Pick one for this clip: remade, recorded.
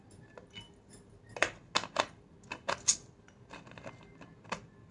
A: recorded